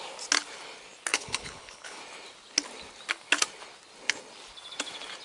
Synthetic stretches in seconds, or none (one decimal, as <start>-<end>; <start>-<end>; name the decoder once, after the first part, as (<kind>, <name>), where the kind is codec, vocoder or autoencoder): 1.1-2.0 (codec, HILCodec)

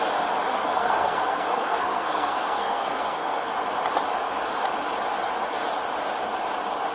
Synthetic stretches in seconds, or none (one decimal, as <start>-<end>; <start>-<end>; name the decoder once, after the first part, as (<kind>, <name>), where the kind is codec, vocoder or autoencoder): 0.5-3.5 (codec, SNAC)